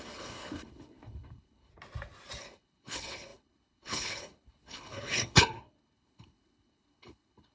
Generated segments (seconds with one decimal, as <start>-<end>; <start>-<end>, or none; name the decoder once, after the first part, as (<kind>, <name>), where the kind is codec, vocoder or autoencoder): 0.0-1.7 (codec, HILCodec); 2.4-7.5